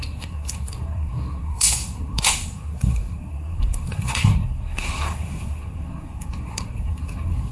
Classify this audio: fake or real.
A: fake